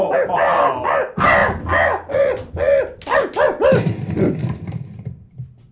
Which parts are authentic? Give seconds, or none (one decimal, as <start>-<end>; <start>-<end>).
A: 0.0-5.7